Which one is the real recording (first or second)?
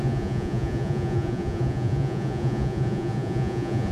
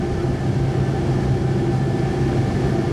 second